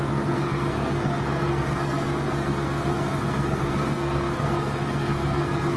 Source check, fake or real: fake